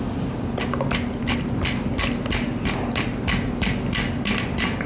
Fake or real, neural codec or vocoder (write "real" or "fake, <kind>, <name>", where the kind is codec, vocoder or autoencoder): real